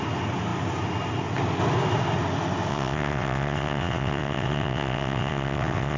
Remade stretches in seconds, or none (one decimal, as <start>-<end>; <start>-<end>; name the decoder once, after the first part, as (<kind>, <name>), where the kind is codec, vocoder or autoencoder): 2.7-6.0 (vocoder, WaveNeXt)